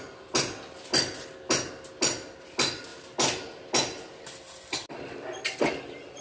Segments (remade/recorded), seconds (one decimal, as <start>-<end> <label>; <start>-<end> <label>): 0.0-6.2 recorded